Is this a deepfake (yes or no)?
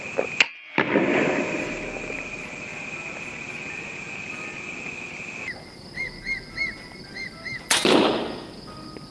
no